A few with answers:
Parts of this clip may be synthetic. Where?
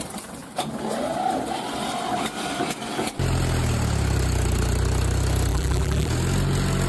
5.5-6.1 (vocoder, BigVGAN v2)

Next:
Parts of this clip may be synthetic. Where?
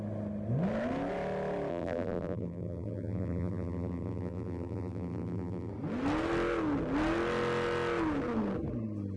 1.7-5.7 (vocoder, BigVGAN v2)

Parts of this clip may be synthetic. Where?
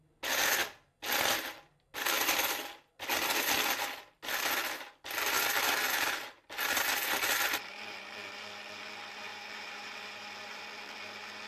9.3-10.6 (vocoder, BigVGAN v2)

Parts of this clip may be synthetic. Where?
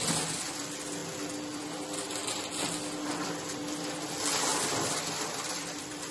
4.5-6.1 (vocoder, BigVGAN v2)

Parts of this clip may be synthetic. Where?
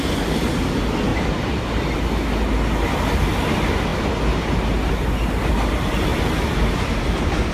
1.1-1.8 (vocoder, BigVGAN v2)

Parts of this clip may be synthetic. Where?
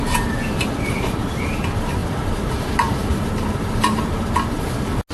2.0-3.5 (vocoder, BigVGAN v2)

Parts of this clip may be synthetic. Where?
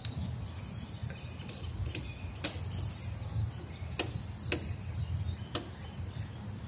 none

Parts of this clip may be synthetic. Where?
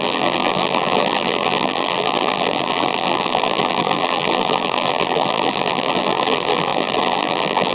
0.0-7.7 (vocoder, BigVGAN v2)